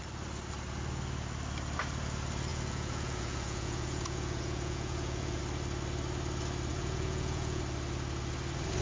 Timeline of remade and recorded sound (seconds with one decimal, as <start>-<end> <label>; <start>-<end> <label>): 0.0-2.5 recorded; 2.5-5.4 remade; 5.4-6.7 recorded; 6.7-7.6 remade; 7.6-8.8 recorded